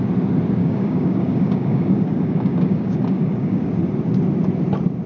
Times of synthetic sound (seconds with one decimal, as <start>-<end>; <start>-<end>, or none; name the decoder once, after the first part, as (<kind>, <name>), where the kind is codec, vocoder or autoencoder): 0.6-3.7 (codec, DAC)